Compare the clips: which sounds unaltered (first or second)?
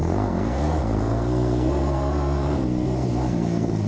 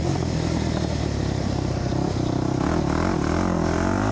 second